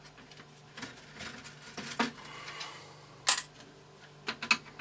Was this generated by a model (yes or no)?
no